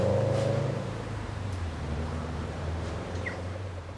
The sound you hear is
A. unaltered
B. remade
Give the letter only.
B